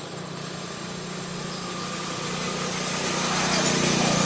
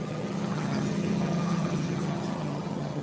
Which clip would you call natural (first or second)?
first